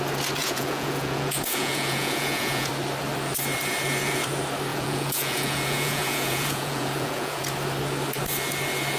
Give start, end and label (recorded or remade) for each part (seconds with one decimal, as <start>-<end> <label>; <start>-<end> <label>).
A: 0.0-0.4 recorded; 0.4-2.7 remade; 2.7-4.7 recorded; 4.7-7.4 remade; 7.4-9.0 recorded